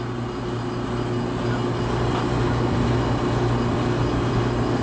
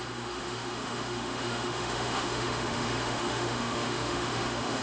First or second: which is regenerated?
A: second